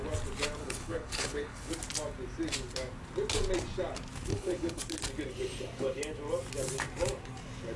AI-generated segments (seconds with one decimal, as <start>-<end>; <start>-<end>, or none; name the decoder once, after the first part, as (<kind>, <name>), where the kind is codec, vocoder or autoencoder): 0.6-1.7 (codec, HILCodec); 4.3-4.8